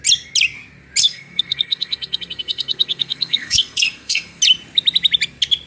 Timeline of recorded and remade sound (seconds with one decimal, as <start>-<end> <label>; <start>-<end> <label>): 0.0-1.0 recorded; 1.0-4.4 remade; 4.4-5.7 recorded